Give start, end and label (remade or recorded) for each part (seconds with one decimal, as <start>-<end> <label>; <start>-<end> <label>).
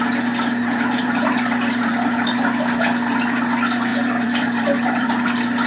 0.0-0.6 recorded; 0.6-2.3 remade; 2.3-3.9 recorded; 3.9-5.1 remade; 5.1-5.7 recorded